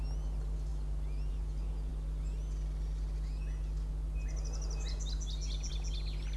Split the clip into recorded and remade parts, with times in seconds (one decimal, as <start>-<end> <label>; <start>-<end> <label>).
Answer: 0.0-6.4 recorded